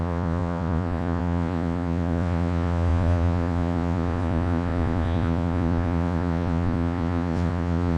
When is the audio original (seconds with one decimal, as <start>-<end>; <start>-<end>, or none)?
none